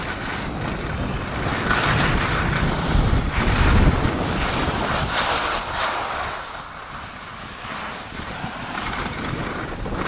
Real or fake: real